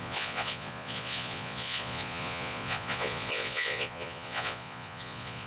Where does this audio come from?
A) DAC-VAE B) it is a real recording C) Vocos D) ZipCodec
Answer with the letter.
C